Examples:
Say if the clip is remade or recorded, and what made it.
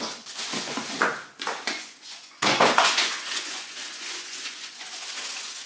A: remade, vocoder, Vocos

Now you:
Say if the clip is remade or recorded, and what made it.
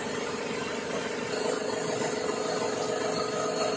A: recorded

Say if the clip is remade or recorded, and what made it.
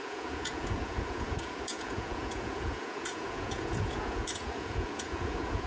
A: remade, vocoder, Vocos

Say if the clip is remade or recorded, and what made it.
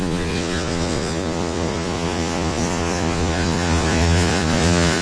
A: remade, vocoder, Vocos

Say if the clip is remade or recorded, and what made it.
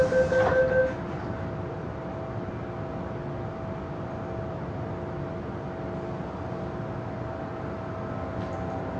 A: recorded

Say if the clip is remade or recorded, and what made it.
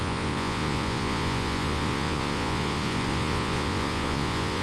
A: remade, vocoder, Vocos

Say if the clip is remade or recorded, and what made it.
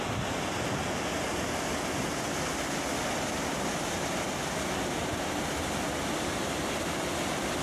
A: recorded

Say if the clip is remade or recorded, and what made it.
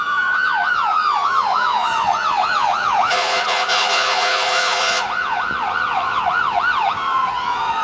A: remade, vocoder, Vocos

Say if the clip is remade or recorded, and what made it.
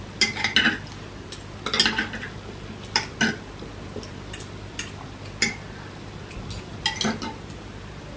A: recorded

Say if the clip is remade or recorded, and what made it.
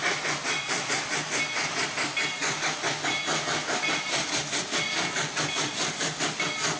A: recorded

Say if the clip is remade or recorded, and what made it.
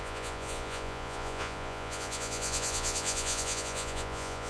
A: remade, vocoder, Vocos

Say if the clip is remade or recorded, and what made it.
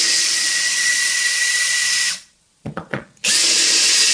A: remade, vocoder, Vocos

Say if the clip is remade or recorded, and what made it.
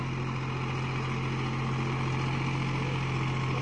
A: recorded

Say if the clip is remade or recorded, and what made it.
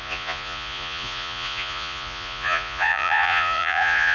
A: remade, vocoder, Vocos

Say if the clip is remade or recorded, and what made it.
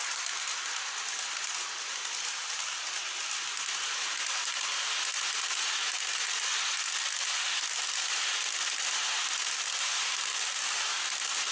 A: recorded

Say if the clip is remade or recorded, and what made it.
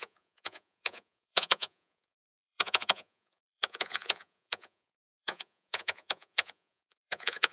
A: remade, vocoder, Vocos